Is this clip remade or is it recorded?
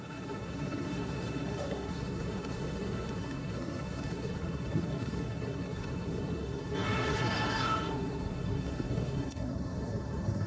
remade